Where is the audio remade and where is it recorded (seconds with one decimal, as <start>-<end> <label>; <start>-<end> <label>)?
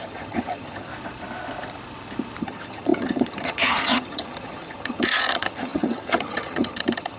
0.0-0.9 remade; 0.9-2.4 recorded; 2.4-7.2 remade